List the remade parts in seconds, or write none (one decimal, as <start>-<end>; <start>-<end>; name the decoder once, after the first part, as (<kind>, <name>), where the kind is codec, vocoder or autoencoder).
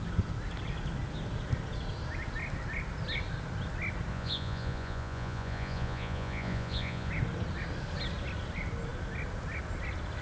4.1-7.1 (vocoder, Vocos)